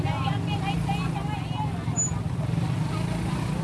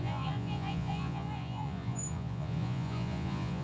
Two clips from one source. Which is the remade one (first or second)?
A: second